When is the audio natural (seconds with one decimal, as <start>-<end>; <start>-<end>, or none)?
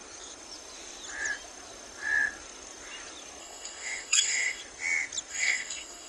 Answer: 0.0-3.4; 4.6-5.3